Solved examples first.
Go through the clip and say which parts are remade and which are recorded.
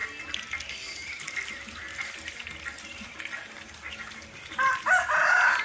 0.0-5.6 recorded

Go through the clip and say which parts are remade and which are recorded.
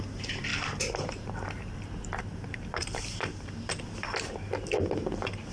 0.0-0.5 recorded; 0.5-3.8 remade; 3.8-5.5 recorded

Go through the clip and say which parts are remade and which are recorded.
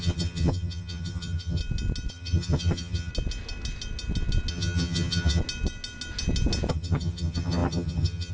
0.0-1.6 remade; 1.6-2.1 recorded; 2.1-3.1 remade; 3.1-4.5 recorded; 4.5-5.4 remade; 5.4-6.7 recorded; 6.7-8.3 remade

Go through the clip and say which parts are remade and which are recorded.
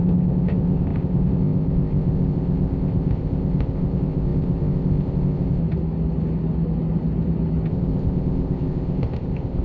0.0-5.6 remade; 5.6-7.7 recorded; 7.7-9.6 remade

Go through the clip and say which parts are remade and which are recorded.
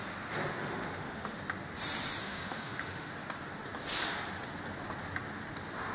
0.0-0.6 recorded; 0.6-1.4 remade; 1.4-2.2 recorded; 2.2-3.1 remade; 3.1-5.9 recorded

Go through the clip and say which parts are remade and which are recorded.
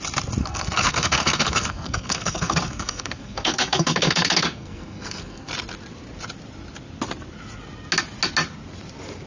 0.0-0.4 recorded; 0.4-5.5 remade; 5.5-9.3 recorded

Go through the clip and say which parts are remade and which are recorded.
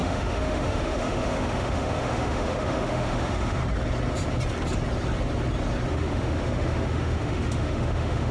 0.0-3.6 remade; 3.6-5.9 recorded; 5.9-8.3 remade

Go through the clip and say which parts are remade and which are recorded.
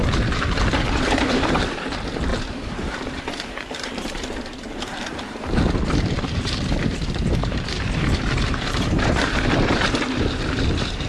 0.0-0.7 recorded; 0.7-11.1 remade